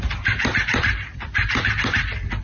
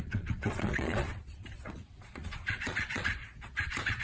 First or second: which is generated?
second